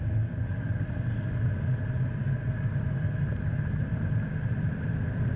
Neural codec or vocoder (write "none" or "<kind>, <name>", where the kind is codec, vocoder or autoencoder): none